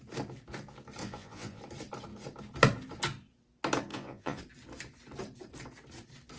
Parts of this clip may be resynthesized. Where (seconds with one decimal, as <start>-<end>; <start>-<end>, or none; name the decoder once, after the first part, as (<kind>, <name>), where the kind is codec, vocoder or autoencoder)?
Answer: 1.0-1.6 (vocoder, Vocos); 3.9-4.4

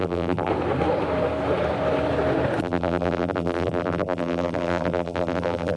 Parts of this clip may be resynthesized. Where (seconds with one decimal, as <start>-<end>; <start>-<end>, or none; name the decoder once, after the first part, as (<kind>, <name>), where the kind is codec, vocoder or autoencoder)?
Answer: 0.0-0.5 (vocoder, BigVGAN v2); 2.6-5.8